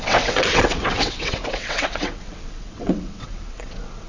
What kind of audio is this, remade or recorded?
remade